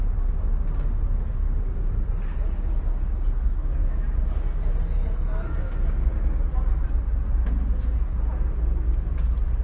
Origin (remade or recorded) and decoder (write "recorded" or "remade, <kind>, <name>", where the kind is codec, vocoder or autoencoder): recorded